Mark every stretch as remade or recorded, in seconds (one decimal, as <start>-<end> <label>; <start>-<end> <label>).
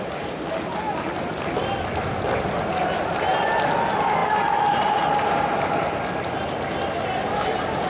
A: 0.0-7.9 recorded